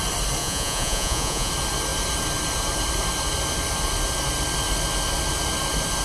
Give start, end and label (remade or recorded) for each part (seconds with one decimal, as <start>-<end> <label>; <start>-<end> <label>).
0.0-0.4 recorded; 0.4-1.5 remade; 1.5-6.0 recorded